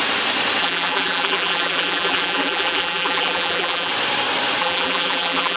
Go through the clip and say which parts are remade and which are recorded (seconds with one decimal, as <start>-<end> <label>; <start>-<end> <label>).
0.0-0.6 recorded; 0.6-3.9 remade; 3.9-4.6 recorded; 4.6-5.6 remade